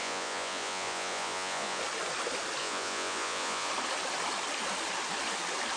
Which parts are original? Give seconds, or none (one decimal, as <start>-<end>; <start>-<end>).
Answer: 1.8-2.6; 3.7-5.8